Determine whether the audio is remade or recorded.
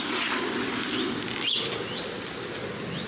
recorded